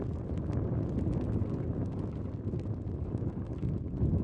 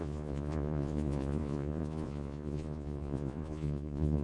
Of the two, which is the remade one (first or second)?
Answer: second